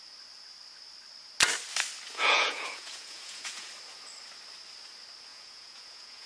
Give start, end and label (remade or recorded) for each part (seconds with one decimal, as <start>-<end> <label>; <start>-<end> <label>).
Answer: 0.0-2.1 recorded; 2.1-3.7 remade; 3.7-5.3 recorded; 5.3-6.3 remade